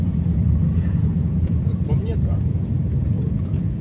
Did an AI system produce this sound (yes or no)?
yes